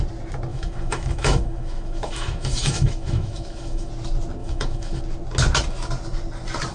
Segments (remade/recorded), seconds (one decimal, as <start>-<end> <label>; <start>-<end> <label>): 0.0-0.5 recorded; 0.5-3.9 remade; 3.9-4.4 recorded; 4.4-5.0 remade; 5.0-6.7 recorded